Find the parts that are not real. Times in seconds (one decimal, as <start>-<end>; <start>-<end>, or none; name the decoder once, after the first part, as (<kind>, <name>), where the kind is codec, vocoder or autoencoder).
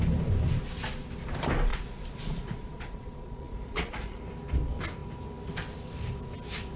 1.7-4.2 (vocoder, Vocos)